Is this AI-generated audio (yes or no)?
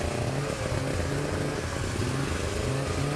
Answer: no